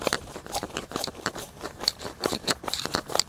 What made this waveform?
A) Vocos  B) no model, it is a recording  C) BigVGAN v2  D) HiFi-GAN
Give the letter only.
C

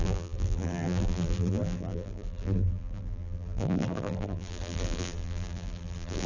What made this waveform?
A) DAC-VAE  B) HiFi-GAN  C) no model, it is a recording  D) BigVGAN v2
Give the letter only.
D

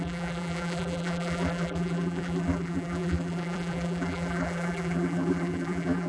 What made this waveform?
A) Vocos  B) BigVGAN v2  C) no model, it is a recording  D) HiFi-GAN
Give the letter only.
B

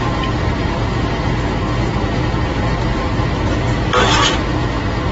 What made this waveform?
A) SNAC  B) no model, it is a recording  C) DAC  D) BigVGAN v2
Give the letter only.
B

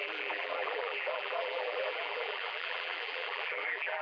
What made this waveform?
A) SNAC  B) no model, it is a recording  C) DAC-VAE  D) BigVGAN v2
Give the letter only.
D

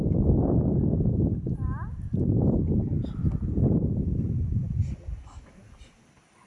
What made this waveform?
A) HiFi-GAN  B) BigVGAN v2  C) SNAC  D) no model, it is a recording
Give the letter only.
D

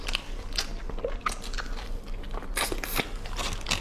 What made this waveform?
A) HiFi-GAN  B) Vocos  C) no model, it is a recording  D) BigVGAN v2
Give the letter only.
C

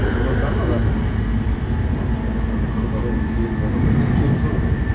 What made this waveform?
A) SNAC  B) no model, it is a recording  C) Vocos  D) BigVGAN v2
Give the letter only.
B